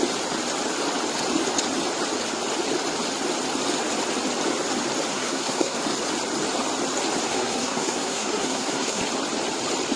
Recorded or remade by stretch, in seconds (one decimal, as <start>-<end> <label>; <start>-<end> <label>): 0.0-5.1 recorded; 5.1-5.8 remade; 5.8-7.3 recorded; 7.3-9.0 remade; 9.0-10.0 recorded